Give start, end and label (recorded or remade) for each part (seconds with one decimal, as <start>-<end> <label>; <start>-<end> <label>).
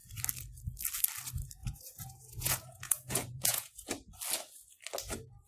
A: 0.0-1.6 recorded; 1.6-3.9 remade; 3.9-5.5 recorded